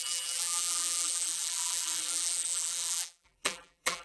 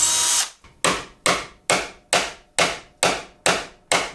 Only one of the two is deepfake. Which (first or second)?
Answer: first